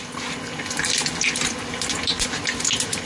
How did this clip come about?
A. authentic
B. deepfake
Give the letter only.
A